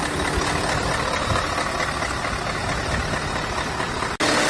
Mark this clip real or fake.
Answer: real